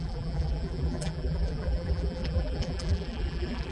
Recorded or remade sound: remade